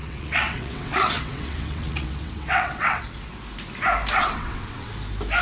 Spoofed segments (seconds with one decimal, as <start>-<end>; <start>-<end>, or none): 0.0-3.0; 4.2-4.9